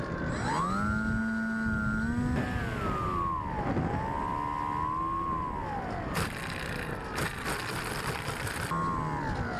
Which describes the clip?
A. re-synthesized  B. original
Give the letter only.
B